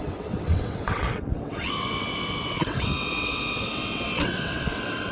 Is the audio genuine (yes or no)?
no